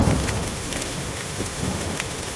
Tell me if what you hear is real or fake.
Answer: fake